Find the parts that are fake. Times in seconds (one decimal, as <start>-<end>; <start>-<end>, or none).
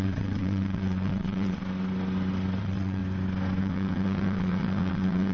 0.0-1.6; 2.6-3.0; 3.6-5.3